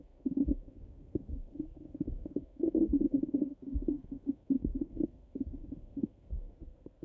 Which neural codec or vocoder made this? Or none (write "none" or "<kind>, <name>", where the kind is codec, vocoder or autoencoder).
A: codec, SNAC